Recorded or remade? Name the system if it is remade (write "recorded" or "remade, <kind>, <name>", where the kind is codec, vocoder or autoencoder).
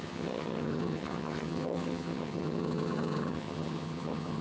remade, vocoder, HiFi-GAN